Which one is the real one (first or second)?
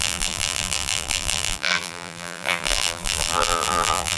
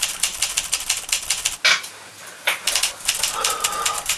second